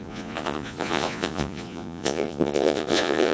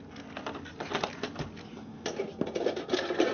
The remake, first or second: first